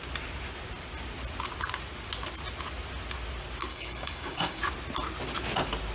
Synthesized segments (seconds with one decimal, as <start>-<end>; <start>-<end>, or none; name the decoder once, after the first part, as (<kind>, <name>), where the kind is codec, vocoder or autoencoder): 3.7-4.6 (codec, DAC)